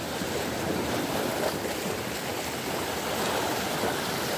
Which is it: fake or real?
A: fake